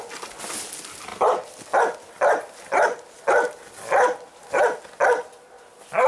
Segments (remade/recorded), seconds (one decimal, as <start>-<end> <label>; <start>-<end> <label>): 0.0-6.1 recorded